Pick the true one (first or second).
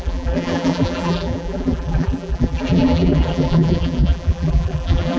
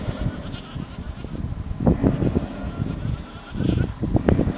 second